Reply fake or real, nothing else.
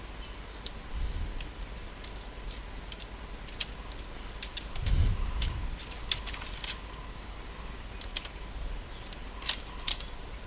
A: real